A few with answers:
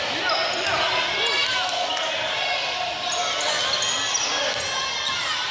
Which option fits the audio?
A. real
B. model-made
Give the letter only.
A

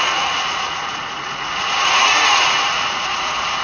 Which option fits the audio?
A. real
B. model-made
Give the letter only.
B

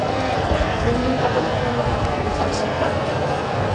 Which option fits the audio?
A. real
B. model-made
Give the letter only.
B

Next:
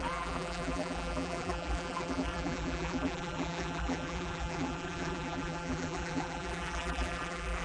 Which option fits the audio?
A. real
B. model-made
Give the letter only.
B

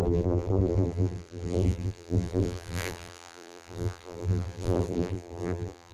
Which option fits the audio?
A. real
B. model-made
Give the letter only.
B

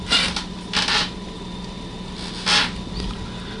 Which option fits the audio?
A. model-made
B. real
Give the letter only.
B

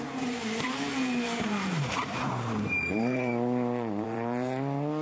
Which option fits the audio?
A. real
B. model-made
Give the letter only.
B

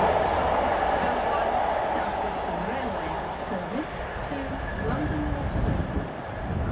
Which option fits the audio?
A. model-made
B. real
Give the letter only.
B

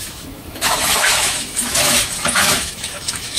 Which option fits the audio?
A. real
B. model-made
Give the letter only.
B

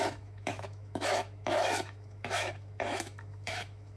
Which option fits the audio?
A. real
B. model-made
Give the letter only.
B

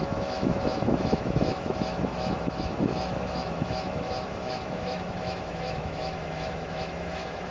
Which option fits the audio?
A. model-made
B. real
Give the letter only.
A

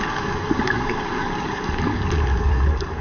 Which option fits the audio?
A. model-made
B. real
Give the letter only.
A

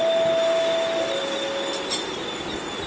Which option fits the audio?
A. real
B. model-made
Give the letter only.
A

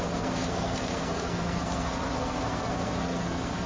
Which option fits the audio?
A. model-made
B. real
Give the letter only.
A